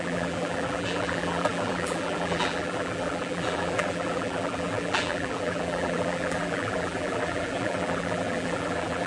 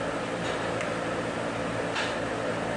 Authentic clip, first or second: second